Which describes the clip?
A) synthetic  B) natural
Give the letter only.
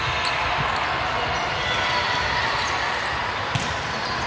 B